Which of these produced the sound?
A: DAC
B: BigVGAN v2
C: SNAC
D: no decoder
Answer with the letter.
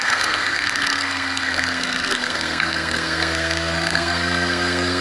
C